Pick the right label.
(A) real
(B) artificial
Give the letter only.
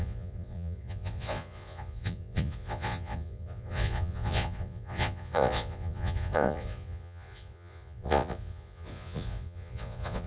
B